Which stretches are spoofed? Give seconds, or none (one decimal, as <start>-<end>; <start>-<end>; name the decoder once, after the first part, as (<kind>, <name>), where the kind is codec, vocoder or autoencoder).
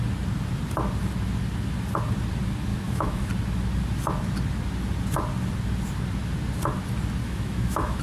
2.7-3.3 (autoencoder, DAC-VAE); 7.2-8.0